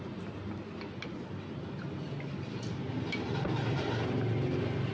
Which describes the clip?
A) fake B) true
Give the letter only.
B